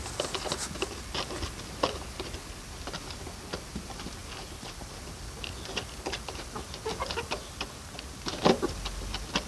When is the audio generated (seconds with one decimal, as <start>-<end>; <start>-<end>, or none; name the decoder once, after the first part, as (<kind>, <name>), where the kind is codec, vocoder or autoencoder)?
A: none